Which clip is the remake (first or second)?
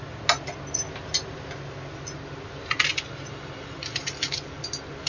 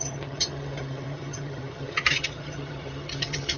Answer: second